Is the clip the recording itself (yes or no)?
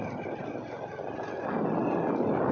yes